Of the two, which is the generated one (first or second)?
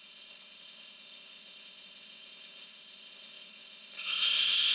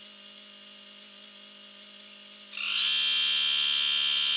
first